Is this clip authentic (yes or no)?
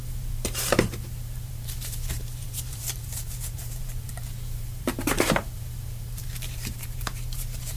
no